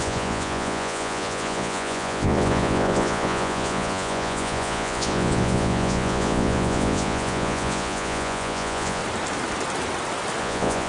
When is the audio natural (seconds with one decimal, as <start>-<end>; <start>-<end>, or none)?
9.0-10.4